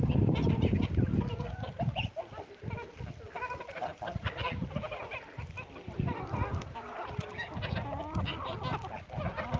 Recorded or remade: recorded